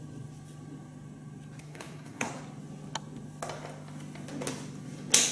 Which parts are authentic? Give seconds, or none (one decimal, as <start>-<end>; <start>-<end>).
0.0-1.6; 2.3-5.3